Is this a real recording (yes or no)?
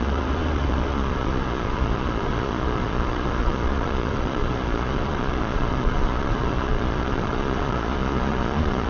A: no